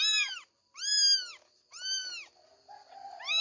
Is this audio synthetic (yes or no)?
no